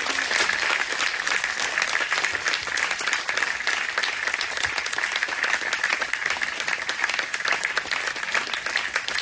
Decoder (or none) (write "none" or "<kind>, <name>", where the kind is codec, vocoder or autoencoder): none